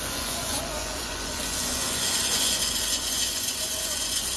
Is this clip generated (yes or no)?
yes